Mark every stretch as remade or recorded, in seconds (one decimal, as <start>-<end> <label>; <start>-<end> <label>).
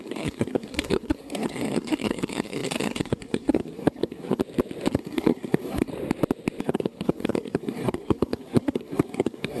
0.0-4.4 remade; 4.4-4.9 recorded; 4.9-5.9 remade; 5.9-6.6 recorded; 6.6-9.6 remade